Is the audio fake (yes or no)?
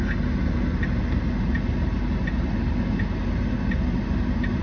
no